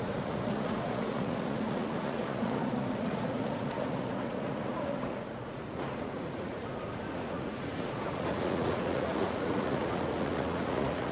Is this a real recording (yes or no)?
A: no